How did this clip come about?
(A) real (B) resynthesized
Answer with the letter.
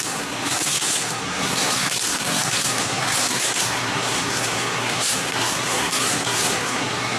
B